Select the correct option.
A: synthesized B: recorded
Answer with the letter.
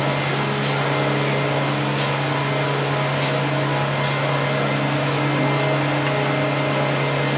B